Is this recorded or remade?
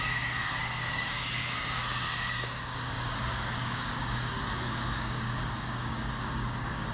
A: remade